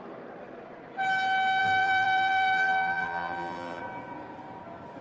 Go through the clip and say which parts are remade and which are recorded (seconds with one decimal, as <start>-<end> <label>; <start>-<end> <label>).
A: 0.0-1.6 recorded; 1.6-3.8 remade; 3.8-5.0 recorded